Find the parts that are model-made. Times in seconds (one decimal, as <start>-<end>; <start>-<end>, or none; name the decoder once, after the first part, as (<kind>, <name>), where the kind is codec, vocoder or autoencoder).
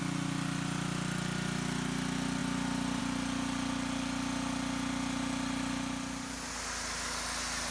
none